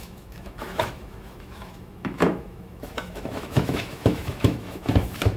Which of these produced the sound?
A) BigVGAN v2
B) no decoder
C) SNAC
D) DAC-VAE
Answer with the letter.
D